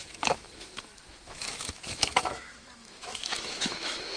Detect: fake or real fake